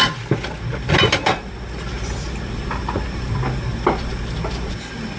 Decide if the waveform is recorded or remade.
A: recorded